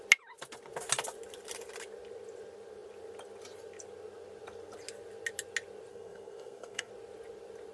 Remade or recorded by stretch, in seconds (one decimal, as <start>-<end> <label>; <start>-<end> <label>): 0.0-5.9 recorded; 5.9-6.9 remade; 6.9-7.7 recorded